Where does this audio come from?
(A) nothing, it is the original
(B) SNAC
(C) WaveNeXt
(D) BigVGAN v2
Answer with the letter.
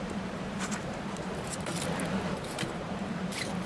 D